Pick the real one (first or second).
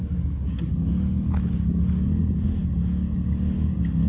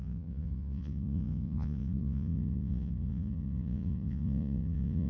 first